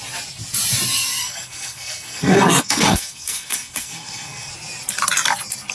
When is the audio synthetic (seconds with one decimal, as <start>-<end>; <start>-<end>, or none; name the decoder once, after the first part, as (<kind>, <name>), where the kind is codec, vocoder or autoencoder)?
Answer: 1.2-4.5 (codec, SNAC)